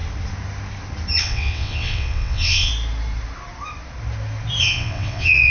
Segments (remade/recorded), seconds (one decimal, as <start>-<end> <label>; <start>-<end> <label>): 0.0-1.2 recorded; 1.2-2.7 remade; 2.7-4.6 recorded; 4.6-5.5 remade